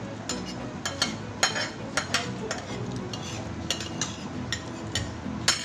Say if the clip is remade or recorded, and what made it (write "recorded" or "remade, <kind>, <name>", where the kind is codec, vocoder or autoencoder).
recorded